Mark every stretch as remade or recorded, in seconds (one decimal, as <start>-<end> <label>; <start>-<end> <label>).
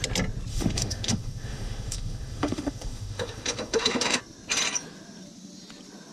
0.0-0.5 recorded; 0.5-4.2 remade; 4.2-6.1 recorded